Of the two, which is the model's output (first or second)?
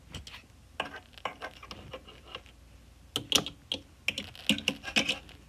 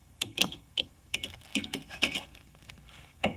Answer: second